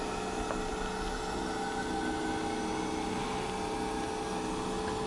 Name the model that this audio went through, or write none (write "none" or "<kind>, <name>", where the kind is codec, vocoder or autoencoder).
none